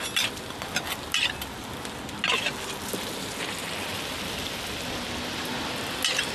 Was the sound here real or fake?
real